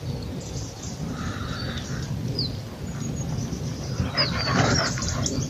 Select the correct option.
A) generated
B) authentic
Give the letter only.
B